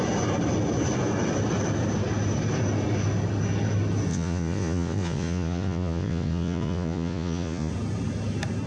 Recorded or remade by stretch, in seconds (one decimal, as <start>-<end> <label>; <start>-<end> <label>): 0.0-4.1 recorded; 4.1-7.7 remade; 7.7-8.7 recorded